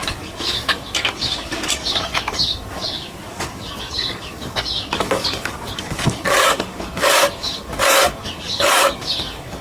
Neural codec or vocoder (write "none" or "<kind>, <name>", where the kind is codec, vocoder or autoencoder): codec, DAC